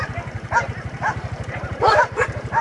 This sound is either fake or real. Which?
fake